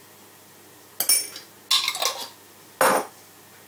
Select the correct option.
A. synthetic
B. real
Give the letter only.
B